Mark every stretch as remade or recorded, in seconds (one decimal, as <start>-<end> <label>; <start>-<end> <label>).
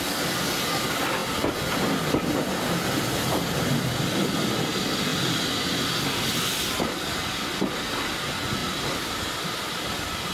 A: 0.0-8.6 recorded; 8.6-9.6 remade; 9.6-10.3 recorded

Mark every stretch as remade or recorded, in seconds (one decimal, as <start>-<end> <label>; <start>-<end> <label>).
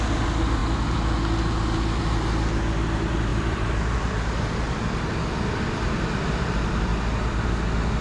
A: 0.0-3.3 recorded; 3.3-5.1 remade; 5.1-8.0 recorded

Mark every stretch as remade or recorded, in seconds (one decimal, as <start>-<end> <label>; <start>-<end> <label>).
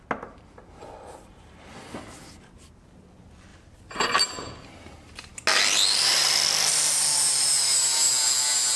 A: 0.0-3.5 recorded; 3.5-4.7 remade; 4.7-8.8 recorded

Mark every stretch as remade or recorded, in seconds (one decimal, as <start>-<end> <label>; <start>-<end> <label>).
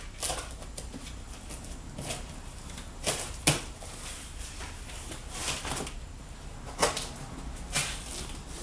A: 0.0-8.6 recorded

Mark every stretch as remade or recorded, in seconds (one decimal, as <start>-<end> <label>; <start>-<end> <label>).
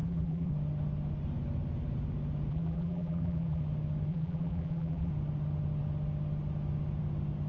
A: 0.0-0.5 remade; 0.5-2.5 recorded; 2.5-3.6 remade; 3.6-4.1 recorded; 4.1-5.1 remade; 5.1-7.5 recorded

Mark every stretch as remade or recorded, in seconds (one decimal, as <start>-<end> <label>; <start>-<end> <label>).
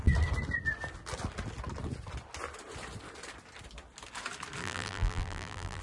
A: 0.0-4.6 recorded; 4.6-5.8 remade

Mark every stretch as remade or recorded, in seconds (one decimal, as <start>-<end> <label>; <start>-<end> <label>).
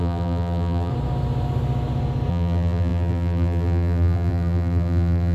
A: 0.0-0.9 remade; 0.9-2.3 recorded; 2.3-5.3 remade